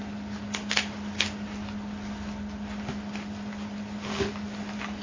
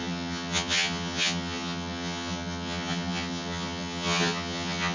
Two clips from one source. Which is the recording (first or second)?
first